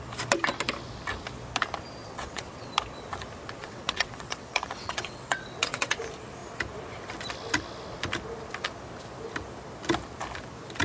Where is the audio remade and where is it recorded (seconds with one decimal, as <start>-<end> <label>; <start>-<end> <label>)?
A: 0.0-2.0 recorded; 2.0-2.7 remade; 2.7-3.6 recorded; 3.6-6.0 remade; 6.0-10.8 recorded